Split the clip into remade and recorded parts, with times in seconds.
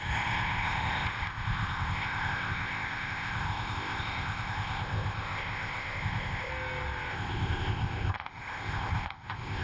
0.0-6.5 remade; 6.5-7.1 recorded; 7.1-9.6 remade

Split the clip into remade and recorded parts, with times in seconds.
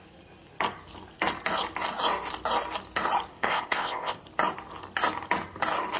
0.0-3.3 recorded; 3.3-4.2 remade; 4.2-6.0 recorded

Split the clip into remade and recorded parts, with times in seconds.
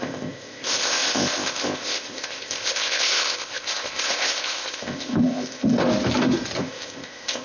0.0-5.8 remade; 5.8-6.6 recorded; 6.6-7.4 remade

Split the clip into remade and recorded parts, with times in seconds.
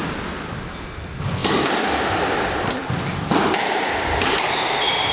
0.0-5.1 recorded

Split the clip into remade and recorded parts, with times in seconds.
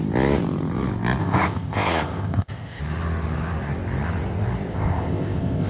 0.0-1.2 recorded; 1.2-2.8 remade; 2.8-4.7 recorded; 4.7-5.7 remade